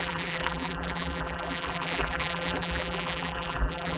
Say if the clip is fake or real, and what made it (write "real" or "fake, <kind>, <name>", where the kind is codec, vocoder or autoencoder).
fake, vocoder, BigVGAN v2